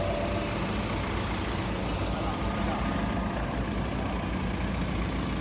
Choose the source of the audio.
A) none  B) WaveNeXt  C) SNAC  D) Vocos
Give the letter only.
A